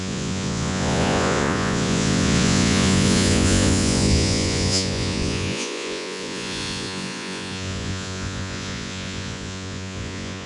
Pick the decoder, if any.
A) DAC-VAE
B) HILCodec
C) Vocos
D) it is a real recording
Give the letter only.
C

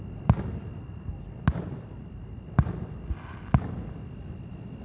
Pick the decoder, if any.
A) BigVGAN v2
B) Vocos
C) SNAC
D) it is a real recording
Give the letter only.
D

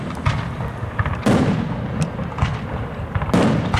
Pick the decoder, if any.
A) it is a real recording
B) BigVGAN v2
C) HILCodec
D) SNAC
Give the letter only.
A